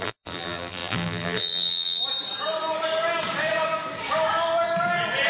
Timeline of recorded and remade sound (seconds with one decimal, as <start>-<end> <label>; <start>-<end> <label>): 0.0-2.0 remade; 2.0-5.3 recorded